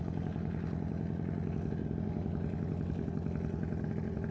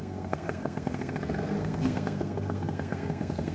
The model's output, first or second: second